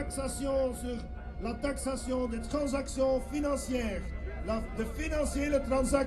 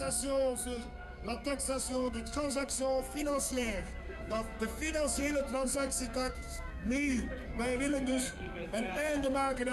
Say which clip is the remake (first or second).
second